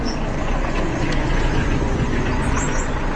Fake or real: fake